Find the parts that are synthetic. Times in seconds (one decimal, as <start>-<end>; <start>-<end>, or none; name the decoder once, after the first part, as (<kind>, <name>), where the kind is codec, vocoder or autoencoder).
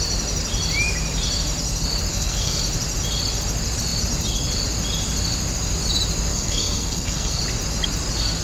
2.1-2.6 (codec, SNAC); 6.3-7.4